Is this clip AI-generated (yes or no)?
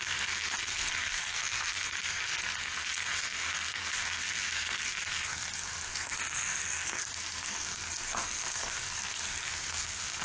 yes